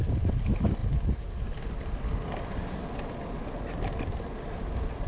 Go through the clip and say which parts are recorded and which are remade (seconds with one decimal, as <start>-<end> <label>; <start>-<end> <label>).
0.0-5.1 recorded